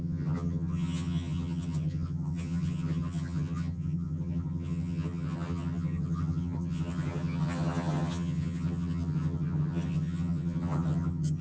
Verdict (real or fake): fake